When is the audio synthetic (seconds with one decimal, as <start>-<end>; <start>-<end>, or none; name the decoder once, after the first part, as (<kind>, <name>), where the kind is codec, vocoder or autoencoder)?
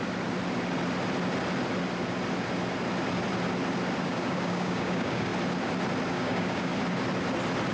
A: 4.0-5.3 (codec, DAC); 6.1-6.7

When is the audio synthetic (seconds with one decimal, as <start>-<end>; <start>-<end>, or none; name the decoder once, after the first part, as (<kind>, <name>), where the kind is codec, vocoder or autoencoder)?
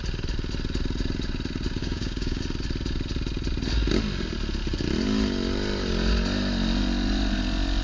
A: 1.8-2.4 (codec, DAC)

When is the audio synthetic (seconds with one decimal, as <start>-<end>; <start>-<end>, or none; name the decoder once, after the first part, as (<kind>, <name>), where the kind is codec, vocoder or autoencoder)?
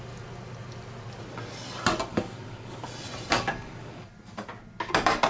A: 2.1-2.9 (codec, DAC); 3.3-4.1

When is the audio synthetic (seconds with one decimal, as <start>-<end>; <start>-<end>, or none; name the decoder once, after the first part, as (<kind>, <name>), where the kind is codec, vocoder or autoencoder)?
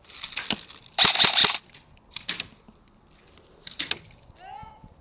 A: none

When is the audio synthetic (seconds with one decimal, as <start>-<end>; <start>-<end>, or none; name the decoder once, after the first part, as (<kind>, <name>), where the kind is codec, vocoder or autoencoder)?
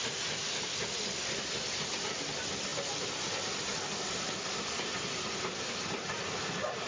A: none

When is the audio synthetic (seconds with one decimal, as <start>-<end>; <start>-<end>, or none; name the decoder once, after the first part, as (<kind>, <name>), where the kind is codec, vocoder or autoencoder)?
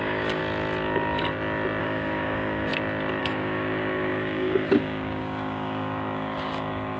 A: 0.0-0.4 (codec, DAC); 1.8-2.7; 3.2-7.0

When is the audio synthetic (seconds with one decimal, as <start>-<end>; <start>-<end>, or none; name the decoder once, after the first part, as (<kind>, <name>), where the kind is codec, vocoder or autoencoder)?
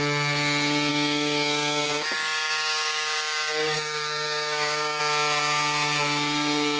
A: 0.9-5.0 (codec, DAC)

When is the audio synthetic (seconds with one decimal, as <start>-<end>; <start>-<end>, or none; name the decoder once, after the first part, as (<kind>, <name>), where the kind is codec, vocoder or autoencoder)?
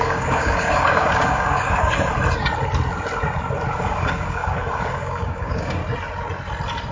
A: 0.0-2.1 (codec, DAC); 3.7-5.8